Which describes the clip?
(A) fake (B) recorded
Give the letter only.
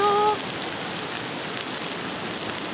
B